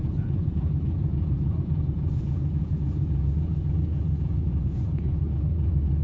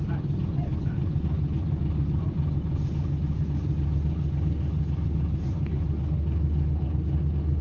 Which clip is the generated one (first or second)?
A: first